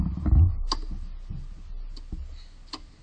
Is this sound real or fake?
real